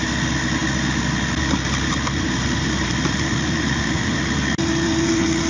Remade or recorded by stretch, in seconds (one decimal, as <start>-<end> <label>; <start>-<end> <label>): 0.0-5.5 recorded